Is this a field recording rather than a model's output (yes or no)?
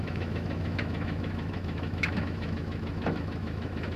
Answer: no